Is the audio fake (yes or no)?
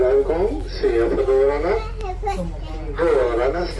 no